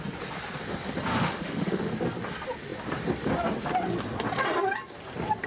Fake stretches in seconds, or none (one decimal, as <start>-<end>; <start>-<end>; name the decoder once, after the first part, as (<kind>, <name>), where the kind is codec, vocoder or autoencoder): 1.1-1.9 (autoencoder, DAC-VAE)